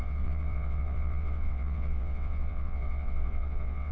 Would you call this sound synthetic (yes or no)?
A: yes